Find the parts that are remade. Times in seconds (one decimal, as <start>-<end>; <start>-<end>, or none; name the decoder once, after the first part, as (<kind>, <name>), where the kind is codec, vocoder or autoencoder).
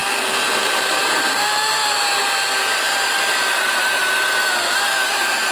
0.7-5.5 (vocoder, BigVGAN v2)